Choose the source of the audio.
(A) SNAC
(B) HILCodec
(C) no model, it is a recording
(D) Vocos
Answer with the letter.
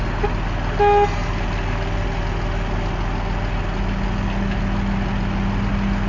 C